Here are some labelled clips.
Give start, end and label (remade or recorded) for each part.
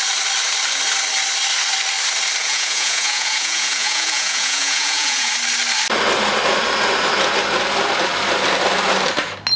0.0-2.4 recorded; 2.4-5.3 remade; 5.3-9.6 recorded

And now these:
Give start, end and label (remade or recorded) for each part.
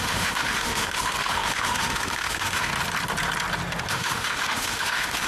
0.0-2.7 remade; 2.7-3.9 recorded; 3.9-5.3 remade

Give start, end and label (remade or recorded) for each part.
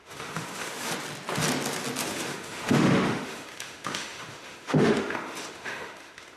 0.0-0.9 remade; 0.9-2.0 recorded; 2.0-6.4 remade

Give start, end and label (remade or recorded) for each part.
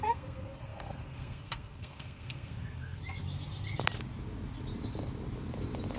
0.0-3.0 remade; 3.0-6.0 recorded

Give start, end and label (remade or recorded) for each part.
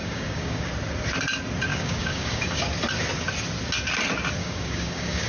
0.0-0.7 remade; 0.7-1.7 recorded; 1.7-2.6 remade; 2.6-4.4 recorded; 4.4-5.3 remade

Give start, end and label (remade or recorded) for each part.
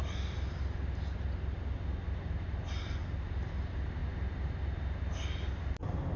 0.0-6.2 recorded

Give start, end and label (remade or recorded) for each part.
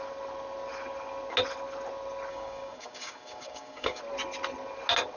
0.0-2.3 recorded; 2.3-4.0 remade; 4.0-5.2 recorded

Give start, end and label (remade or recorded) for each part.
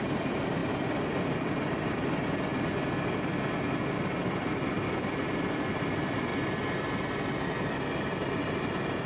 0.0-6.3 remade; 6.3-8.5 recorded; 8.5-9.1 remade